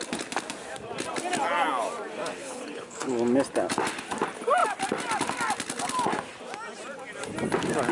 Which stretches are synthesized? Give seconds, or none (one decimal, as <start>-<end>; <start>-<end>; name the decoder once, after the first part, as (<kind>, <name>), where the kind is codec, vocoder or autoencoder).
2.4-3.1 (codec, HILCodec)